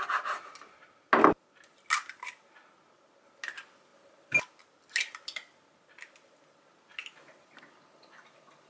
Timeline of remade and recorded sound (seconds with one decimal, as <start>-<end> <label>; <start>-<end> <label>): 0.0-8.7 recorded